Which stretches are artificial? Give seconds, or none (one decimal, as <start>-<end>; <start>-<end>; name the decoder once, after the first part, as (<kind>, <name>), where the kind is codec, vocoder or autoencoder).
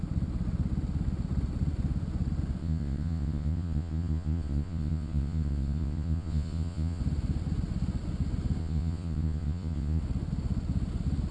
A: 2.6-7.0 (vocoder, Vocos); 8.6-10.0